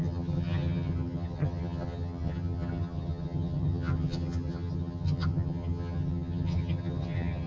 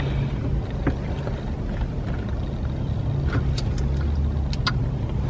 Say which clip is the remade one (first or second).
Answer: first